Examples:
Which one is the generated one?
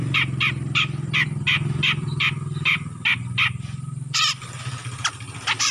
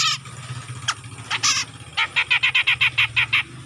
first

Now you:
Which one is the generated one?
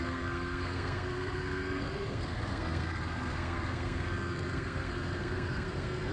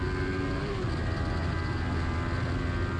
first